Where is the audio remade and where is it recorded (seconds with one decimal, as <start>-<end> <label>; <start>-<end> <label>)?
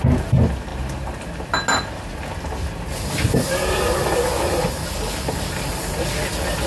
0.0-6.7 recorded